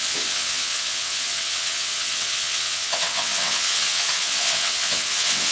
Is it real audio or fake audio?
fake